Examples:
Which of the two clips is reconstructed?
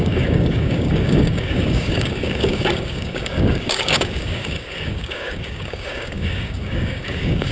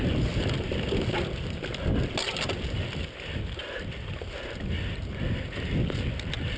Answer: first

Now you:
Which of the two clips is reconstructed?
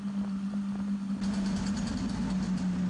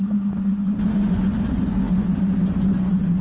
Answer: second